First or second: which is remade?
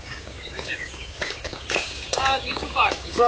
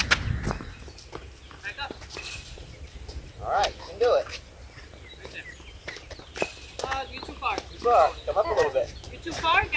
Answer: first